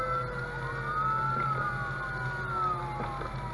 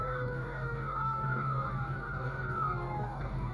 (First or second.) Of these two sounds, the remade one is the second